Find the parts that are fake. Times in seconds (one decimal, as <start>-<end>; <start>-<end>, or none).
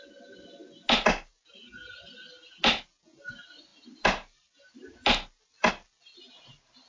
none